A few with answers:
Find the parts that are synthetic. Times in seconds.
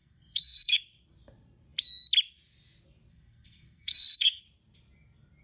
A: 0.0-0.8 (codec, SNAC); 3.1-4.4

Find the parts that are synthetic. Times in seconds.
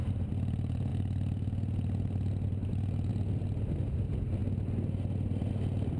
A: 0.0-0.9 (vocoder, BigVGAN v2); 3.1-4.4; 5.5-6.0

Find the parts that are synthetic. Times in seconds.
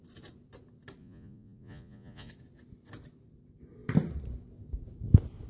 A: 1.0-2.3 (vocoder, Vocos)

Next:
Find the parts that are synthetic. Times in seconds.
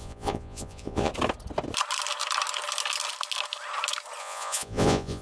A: 0.0-1.1 (vocoder, Vocos); 4.2-5.2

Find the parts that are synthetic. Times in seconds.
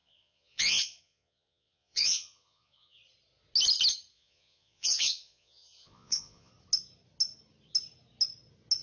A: 0.0-3.0 (vocoder, Vocos); 4.1-6.5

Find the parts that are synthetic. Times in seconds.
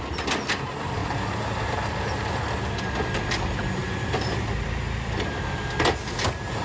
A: 1.0-2.3 (vocoder, BigVGAN v2); 3.8-5.6